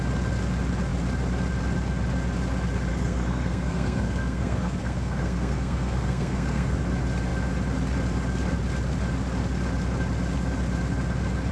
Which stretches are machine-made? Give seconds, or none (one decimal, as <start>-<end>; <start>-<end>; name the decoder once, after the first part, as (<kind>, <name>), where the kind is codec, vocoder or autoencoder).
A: 2.9-6.8 (codec, SNAC)